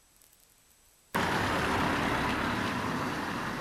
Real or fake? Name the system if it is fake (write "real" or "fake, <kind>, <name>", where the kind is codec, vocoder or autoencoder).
real